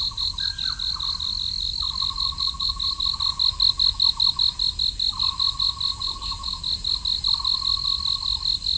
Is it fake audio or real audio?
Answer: real